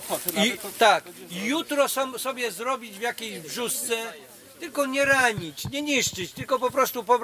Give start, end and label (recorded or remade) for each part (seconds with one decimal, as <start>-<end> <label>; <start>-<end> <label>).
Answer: 0.0-5.2 recorded; 5.2-5.8 remade; 5.8-7.2 recorded